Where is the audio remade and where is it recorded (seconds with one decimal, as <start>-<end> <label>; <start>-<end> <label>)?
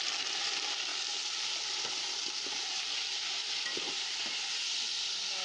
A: 0.0-5.4 recorded